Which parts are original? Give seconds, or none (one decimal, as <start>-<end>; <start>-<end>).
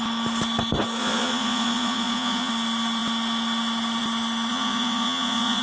0.0-1.0; 2.5-4.5